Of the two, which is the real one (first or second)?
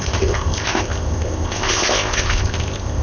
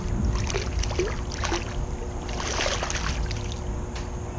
second